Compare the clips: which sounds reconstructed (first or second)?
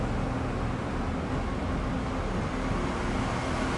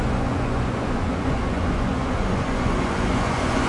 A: second